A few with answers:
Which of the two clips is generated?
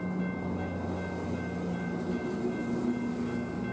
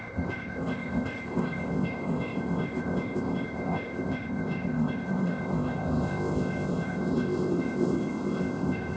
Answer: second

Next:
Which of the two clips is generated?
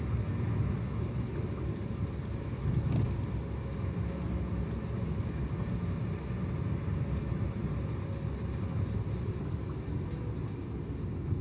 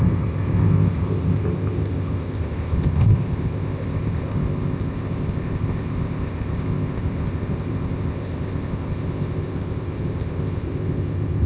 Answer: second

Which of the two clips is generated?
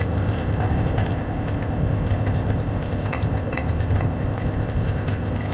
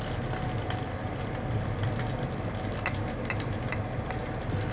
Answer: first